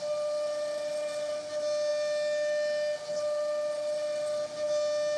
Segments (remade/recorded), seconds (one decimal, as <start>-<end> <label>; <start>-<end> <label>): 0.0-5.2 recorded